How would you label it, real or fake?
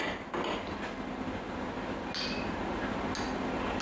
real